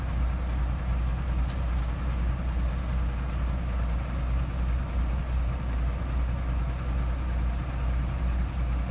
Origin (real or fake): real